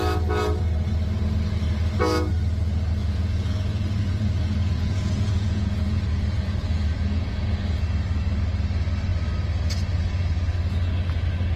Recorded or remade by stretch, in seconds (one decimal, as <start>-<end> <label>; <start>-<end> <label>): 0.0-3.0 recorded; 3.0-7.8 remade; 7.8-11.6 recorded